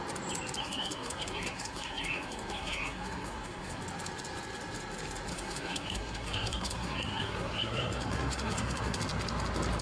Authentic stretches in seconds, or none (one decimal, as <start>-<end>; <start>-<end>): 0.0-0.6; 3.8-5.3; 9.0-9.8

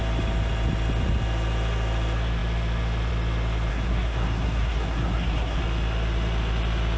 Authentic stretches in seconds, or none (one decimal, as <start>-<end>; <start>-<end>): 0.0-3.7; 5.6-7.0

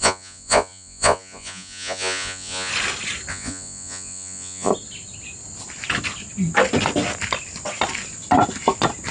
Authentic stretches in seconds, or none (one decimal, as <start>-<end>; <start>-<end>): 2.7-3.3; 4.7-9.1

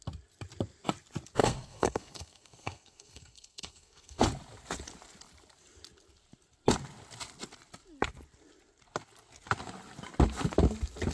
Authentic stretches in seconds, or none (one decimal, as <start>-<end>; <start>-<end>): 0.0-1.4; 4.2-11.1

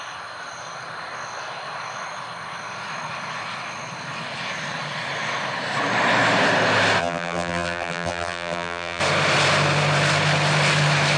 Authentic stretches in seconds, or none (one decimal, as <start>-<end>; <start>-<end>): 0.0-7.0; 9.0-11.2

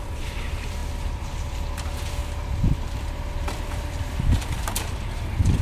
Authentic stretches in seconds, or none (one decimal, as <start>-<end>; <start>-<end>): none